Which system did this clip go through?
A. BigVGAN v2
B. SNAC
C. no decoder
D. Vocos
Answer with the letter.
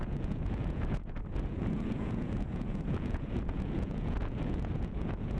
D